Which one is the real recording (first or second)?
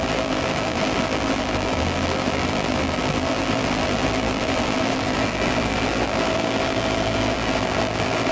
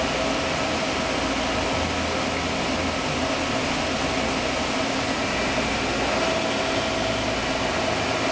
second